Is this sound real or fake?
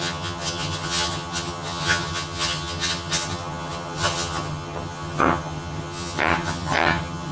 fake